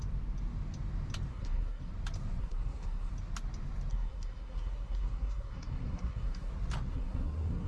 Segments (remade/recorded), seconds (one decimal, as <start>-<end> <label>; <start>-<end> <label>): 0.0-1.3 recorded; 1.3-1.9 remade; 1.9-2.4 recorded; 2.4-3.1 remade; 3.1-3.9 recorded; 3.9-6.5 remade; 6.5-6.9 recorded; 6.9-7.7 remade